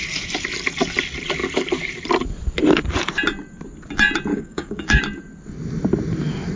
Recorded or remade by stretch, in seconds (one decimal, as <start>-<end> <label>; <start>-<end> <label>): 0.0-4.3 recorded; 4.3-5.0 remade; 5.0-6.6 recorded